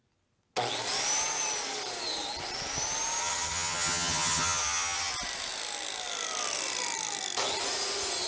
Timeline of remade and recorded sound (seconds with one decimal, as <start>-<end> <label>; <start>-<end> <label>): 0.0-3.2 recorded; 3.2-5.1 remade; 5.1-8.3 recorded